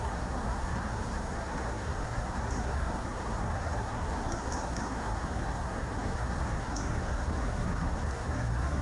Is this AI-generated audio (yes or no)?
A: yes